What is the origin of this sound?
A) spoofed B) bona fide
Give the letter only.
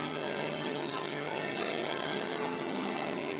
A